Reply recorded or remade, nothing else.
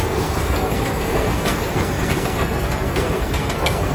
remade